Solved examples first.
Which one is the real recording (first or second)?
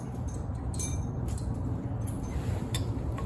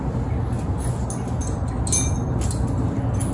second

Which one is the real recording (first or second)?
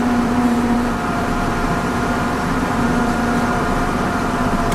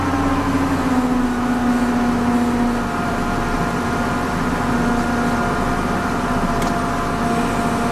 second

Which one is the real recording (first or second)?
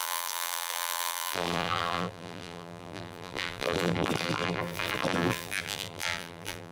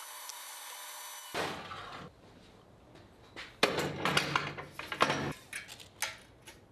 second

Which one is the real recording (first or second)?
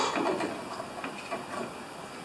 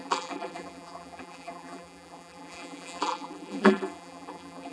first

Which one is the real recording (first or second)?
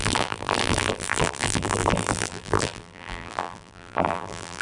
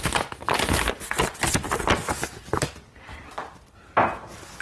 second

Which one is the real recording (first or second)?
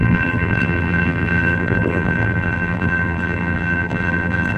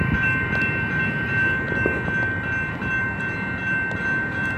second